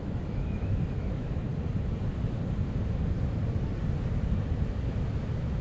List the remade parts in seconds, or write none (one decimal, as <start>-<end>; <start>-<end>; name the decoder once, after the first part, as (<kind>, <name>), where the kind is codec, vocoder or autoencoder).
0.0-1.5 (autoencoder, DAC-VAE); 4.9-5.6